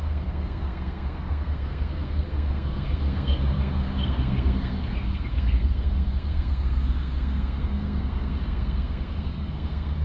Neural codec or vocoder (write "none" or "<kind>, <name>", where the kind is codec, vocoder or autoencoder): codec, SNAC